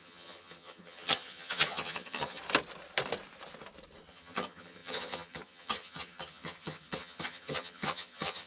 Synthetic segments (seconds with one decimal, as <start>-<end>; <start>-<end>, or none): 0.0-2.4; 4.1-8.5